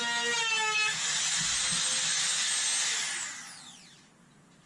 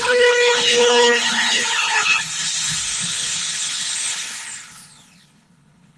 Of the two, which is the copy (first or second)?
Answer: second